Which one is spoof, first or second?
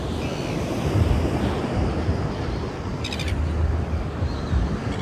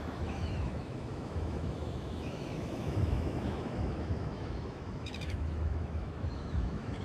second